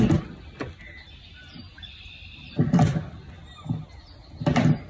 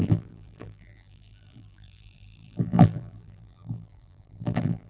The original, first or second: first